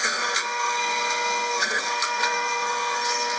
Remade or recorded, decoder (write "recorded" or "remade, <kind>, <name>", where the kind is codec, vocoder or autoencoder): remade, codec, SNAC